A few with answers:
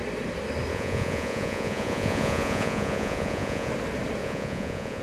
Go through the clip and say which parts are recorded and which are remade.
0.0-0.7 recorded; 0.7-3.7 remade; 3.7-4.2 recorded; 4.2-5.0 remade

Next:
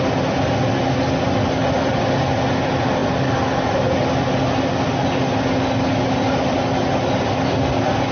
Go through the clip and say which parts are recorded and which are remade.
0.0-8.1 recorded

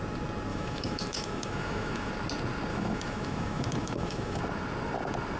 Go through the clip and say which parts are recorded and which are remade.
0.0-0.5 recorded; 0.5-2.1 remade; 2.1-2.7 recorded; 2.7-4.4 remade; 4.4-5.4 recorded

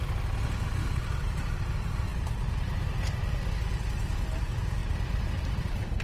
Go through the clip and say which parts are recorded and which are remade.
0.0-0.8 recorded; 0.8-1.6 remade; 1.6-6.0 recorded